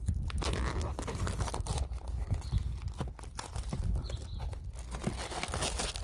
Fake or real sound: real